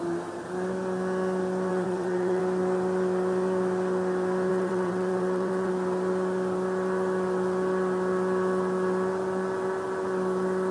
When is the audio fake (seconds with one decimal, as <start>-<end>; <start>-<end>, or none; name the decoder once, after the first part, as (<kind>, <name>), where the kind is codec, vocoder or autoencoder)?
1.7-2.4 (vocoder, WaveNeXt); 4.5-5.7